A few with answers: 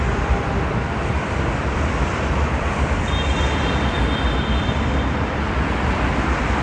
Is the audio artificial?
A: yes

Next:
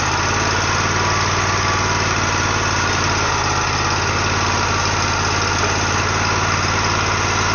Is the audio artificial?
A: no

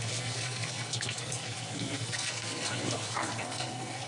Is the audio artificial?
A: yes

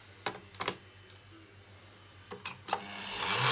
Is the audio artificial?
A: no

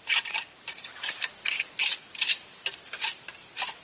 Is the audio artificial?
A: yes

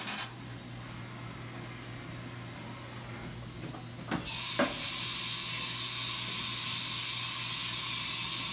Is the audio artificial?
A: no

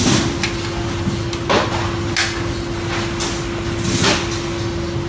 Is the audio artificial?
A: no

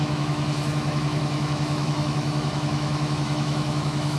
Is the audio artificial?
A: yes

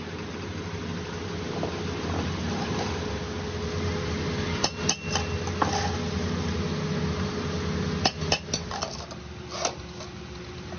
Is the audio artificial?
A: no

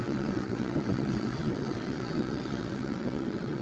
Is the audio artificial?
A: yes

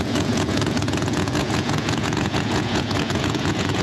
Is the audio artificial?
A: yes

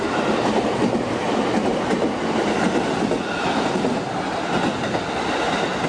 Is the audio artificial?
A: no